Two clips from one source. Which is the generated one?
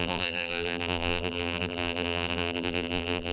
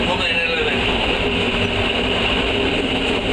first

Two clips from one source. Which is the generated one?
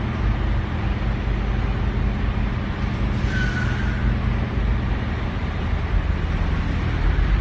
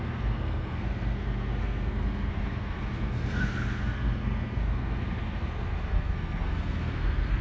second